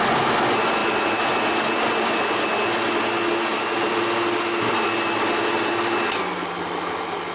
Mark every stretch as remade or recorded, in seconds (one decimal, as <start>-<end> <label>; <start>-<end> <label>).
0.0-7.3 recorded